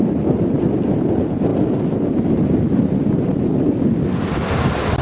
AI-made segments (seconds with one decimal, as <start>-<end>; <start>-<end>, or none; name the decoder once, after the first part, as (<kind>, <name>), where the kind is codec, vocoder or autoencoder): none